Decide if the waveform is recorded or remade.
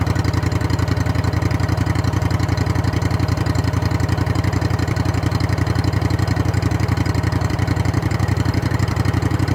remade